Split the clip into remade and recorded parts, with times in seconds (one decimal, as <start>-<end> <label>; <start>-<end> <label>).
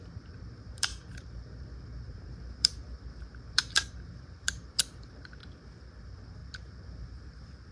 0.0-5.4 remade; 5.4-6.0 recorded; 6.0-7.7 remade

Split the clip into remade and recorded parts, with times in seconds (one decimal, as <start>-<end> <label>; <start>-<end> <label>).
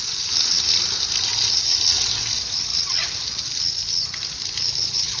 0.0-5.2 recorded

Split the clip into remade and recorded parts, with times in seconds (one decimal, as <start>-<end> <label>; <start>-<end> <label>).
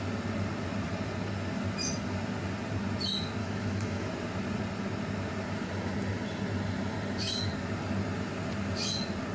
0.0-3.4 recorded; 3.4-4.1 remade; 4.1-9.3 recorded